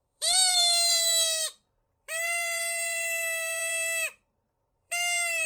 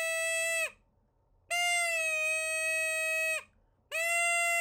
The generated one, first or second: first